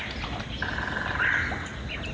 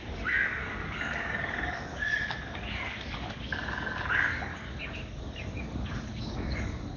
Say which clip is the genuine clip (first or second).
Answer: first